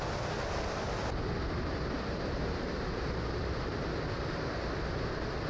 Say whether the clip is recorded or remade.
recorded